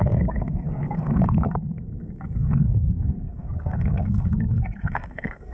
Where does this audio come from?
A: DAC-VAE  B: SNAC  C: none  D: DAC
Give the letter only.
B